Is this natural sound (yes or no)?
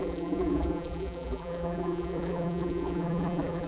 no